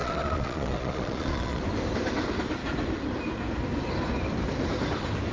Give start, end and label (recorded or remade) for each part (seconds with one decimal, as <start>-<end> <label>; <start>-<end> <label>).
0.0-1.6 remade; 1.6-5.3 recorded